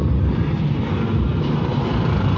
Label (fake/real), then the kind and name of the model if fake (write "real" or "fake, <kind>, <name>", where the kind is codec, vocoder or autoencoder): real